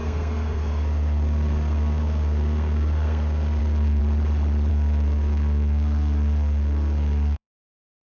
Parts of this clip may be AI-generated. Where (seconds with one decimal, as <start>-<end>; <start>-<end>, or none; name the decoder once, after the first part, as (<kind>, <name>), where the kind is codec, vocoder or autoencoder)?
0.0-4.0 (codec, SNAC); 4.7-8.0